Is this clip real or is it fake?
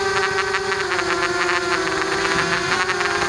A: real